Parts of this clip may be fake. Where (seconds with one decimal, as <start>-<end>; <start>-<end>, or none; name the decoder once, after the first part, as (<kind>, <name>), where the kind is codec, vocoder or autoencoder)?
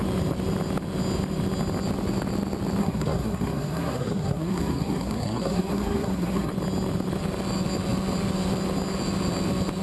2.8-6.5 (codec, SNAC)